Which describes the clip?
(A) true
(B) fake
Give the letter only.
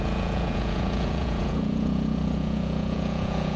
B